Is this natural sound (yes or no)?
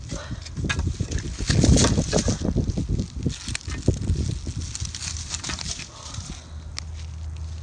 yes